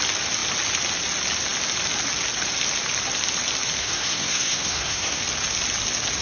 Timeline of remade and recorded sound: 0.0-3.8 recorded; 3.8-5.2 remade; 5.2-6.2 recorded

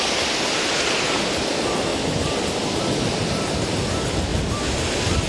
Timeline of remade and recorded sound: 0.0-1.9 remade; 1.9-2.4 recorded; 2.4-4.3 remade; 4.3-5.3 recorded

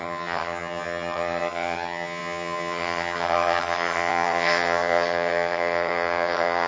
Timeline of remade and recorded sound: 0.0-6.7 remade

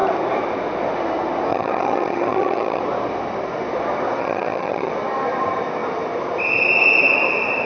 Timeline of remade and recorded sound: 0.0-1.5 recorded; 1.5-2.8 remade; 2.8-4.2 recorded; 4.2-4.9 remade; 4.9-7.7 recorded

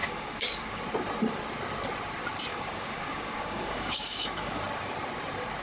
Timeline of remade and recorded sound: 0.0-0.8 remade; 0.8-2.5 recorded; 2.5-4.6 remade; 4.6-5.6 recorded

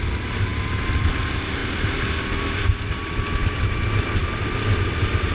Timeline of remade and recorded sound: 0.0-1.6 remade; 1.6-3.7 recorded; 3.7-5.3 remade

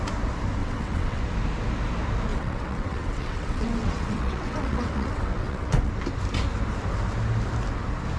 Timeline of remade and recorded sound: 0.0-0.6 recorded; 0.6-1.2 remade; 1.2-2.3 recorded; 2.3-5.9 remade; 5.9-8.2 recorded